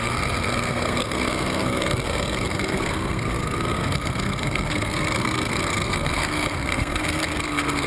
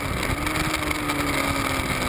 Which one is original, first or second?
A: second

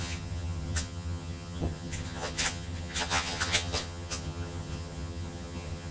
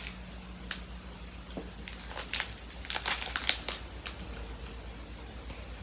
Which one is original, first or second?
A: second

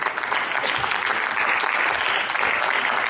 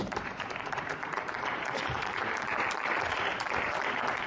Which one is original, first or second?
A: first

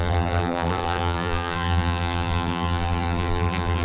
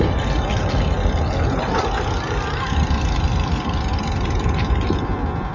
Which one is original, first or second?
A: second